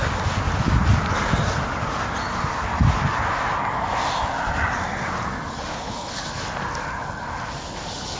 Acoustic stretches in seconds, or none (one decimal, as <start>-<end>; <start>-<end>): 0.0-5.7; 6.2-8.2